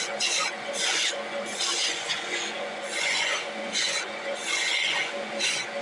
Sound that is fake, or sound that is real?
fake